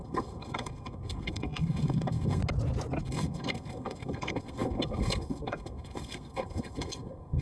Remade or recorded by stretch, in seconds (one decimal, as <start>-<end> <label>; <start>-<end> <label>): 0.0-2.4 remade; 2.4-3.0 recorded; 3.0-7.4 remade